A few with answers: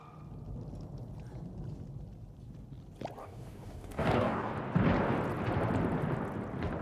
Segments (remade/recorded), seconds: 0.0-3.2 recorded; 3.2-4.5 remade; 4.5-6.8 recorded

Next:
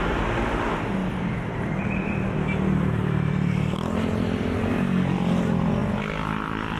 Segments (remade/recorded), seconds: 0.0-1.0 recorded; 1.0-4.7 remade; 4.7-5.8 recorded; 5.8-6.8 remade